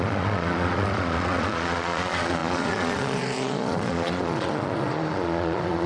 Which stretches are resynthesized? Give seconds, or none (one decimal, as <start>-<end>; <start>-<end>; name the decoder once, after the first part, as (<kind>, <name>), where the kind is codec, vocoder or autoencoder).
0.0-5.9 (vocoder, Vocos)